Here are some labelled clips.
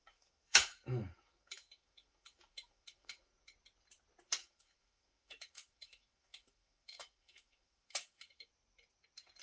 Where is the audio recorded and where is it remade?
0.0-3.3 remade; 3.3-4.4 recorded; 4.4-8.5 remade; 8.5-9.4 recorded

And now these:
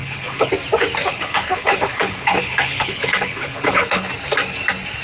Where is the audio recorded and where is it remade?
0.0-0.5 remade; 0.5-1.1 recorded; 1.1-4.1 remade; 4.1-5.0 recorded

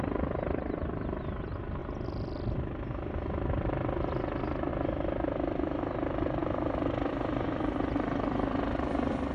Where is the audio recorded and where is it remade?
0.0-1.8 remade; 1.8-4.7 recorded; 4.7-9.3 remade

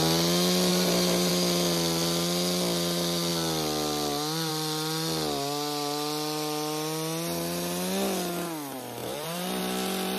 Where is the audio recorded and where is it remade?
0.0-0.7 recorded; 0.7-1.3 remade; 1.3-9.0 recorded; 9.0-9.6 remade; 9.6-10.2 recorded